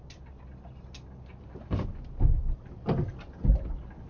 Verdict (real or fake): real